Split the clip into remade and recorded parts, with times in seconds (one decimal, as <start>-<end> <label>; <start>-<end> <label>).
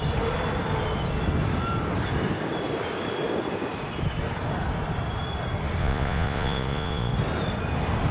0.0-5.8 recorded; 5.8-7.1 remade; 7.1-8.1 recorded